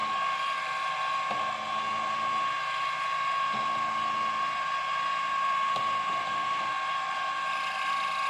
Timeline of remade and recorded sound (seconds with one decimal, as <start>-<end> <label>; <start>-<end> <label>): 0.0-8.3 recorded